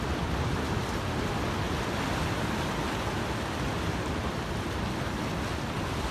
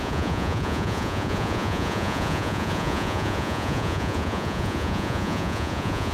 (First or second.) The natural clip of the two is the first